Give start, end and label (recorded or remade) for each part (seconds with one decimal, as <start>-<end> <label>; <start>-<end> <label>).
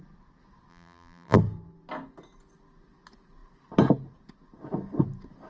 0.0-0.7 recorded; 0.7-1.4 remade; 1.4-5.5 recorded